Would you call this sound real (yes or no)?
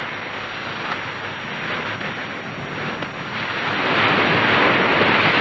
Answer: yes